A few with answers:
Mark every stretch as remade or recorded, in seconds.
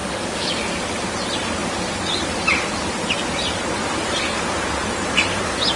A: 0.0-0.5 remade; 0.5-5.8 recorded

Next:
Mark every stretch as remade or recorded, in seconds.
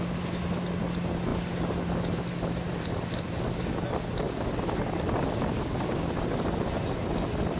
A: 0.0-5.5 recorded; 5.5-6.1 remade; 6.1-7.6 recorded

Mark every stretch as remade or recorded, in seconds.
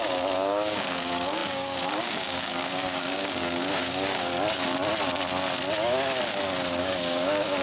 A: 0.0-4.3 remade; 4.3-6.8 recorded; 6.8-7.6 remade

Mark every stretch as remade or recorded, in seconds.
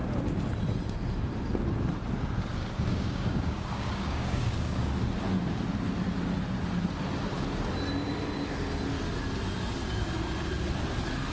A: 0.0-2.6 recorded; 2.6-4.9 remade; 4.9-11.3 recorded